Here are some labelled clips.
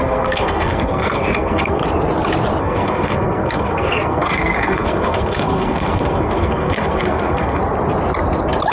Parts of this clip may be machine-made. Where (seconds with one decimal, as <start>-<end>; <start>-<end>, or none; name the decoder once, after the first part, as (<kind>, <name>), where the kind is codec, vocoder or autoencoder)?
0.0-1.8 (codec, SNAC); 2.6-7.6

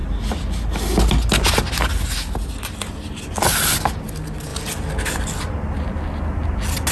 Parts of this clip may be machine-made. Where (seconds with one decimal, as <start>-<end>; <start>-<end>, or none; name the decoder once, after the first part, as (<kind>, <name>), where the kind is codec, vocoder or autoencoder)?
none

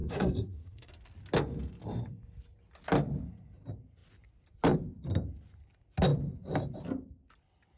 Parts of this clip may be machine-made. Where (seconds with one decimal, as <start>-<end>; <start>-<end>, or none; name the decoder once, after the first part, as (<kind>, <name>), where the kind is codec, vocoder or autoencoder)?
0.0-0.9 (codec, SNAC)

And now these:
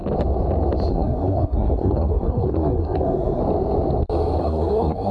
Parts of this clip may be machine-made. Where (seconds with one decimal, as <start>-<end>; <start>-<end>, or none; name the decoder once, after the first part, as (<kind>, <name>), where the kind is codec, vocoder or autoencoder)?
0.9-3.4 (codec, SNAC); 4.4-5.1

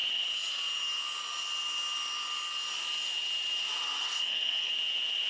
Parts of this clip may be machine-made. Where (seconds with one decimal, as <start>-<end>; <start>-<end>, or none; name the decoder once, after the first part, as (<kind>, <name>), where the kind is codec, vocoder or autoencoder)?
4.0-4.7 (codec, SNAC)

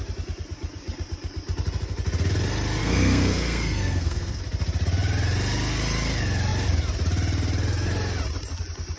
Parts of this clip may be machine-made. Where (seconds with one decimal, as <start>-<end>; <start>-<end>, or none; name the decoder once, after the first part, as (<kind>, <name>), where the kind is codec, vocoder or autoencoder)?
2.8-4.4 (codec, SNAC)

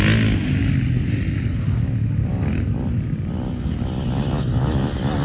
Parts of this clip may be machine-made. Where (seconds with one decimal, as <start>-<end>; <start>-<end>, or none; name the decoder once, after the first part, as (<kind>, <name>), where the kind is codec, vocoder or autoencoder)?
none

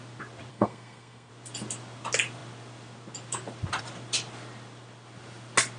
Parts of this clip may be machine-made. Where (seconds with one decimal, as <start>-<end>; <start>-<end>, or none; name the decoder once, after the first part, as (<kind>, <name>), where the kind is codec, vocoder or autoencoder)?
0.5-1.3 (codec, SNAC)